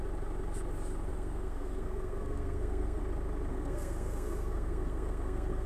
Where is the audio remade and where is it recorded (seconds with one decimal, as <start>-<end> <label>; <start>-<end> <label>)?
0.0-1.1 recorded; 1.1-3.0 remade; 3.0-3.5 recorded; 3.5-5.7 remade